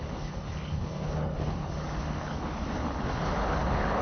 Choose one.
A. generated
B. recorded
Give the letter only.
A